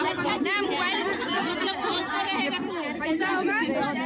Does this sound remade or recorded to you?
recorded